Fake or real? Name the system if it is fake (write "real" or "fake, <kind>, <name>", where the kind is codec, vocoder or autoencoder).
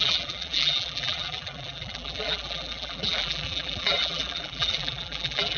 fake, vocoder, BigVGAN v2